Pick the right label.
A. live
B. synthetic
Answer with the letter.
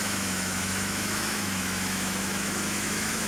B